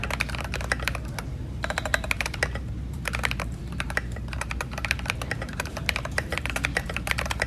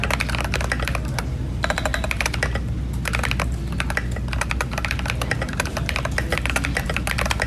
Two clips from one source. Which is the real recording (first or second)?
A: second